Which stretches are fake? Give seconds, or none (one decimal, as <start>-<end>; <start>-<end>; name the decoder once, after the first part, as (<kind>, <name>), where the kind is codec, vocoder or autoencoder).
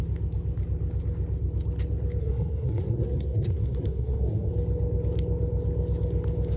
2.2-4.5 (codec, SNAC)